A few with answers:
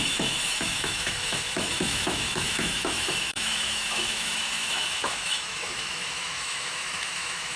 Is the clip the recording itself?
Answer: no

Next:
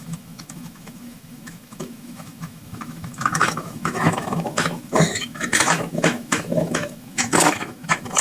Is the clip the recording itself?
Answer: no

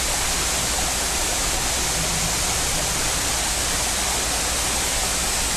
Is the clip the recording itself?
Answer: yes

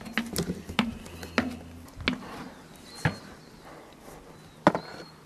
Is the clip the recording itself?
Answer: yes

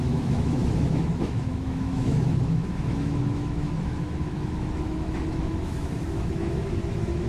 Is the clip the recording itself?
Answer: no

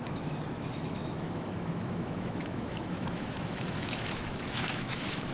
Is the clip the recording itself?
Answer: no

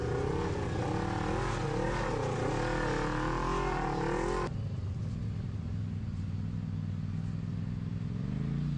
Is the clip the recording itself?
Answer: yes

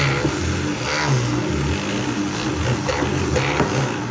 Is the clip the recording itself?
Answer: yes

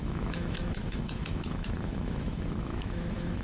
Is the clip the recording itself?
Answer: no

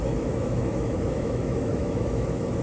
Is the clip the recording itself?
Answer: no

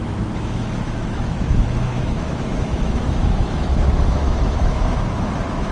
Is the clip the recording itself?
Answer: no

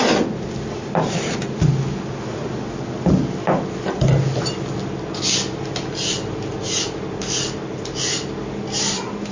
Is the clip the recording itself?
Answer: yes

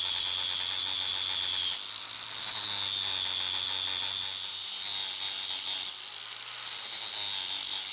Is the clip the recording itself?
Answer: yes